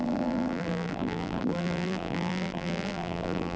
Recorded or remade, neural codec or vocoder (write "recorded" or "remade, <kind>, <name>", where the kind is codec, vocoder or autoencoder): remade, vocoder, BigVGAN v2